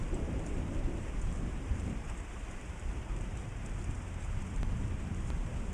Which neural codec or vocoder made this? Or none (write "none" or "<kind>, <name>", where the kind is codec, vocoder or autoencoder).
vocoder, BigVGAN v2